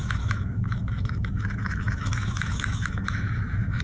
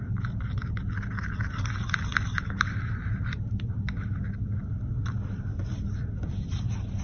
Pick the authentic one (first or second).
second